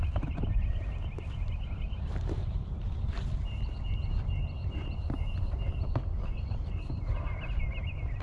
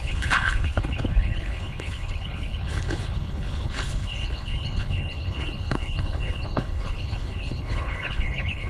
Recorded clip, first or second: first